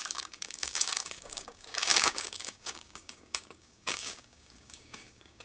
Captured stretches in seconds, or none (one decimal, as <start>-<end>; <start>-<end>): none